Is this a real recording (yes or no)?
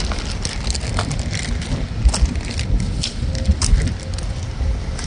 yes